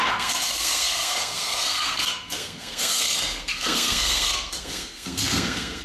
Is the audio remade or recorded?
remade